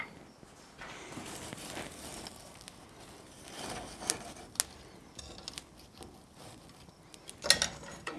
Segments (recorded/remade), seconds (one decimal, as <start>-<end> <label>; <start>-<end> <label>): 0.0-8.2 recorded